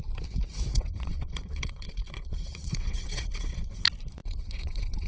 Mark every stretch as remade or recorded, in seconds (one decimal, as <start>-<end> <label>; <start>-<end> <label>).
0.0-0.7 recorded; 0.7-3.8 remade; 3.8-4.2 recorded; 4.2-5.1 remade